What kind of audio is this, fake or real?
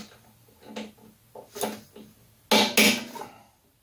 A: real